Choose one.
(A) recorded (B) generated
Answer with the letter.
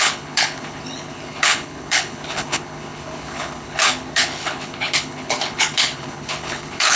B